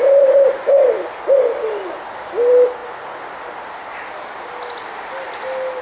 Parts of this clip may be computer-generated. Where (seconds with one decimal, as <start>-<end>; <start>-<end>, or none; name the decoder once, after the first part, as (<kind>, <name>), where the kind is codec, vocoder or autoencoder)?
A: none